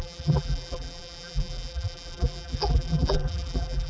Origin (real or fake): fake